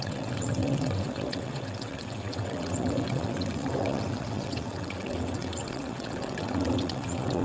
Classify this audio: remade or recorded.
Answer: remade